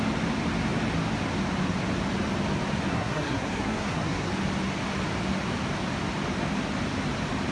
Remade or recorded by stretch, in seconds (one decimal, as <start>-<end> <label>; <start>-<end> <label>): 0.0-2.9 recorded; 2.9-4.3 remade; 4.3-7.5 recorded